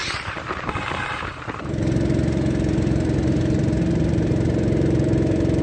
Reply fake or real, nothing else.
fake